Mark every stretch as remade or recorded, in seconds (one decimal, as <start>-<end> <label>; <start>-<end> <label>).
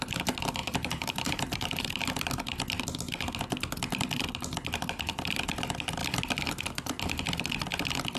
0.0-0.6 recorded; 0.6-1.9 remade; 1.9-8.2 recorded